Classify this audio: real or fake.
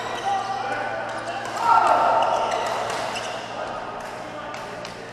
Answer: real